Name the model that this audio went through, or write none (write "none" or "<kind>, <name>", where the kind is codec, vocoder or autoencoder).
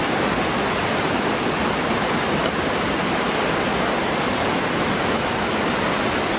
none